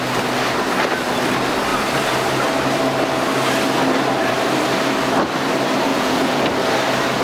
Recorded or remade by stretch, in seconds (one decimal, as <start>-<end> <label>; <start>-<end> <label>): 0.0-5.9 recorded; 5.9-6.4 remade; 6.4-7.2 recorded